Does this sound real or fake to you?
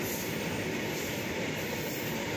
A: real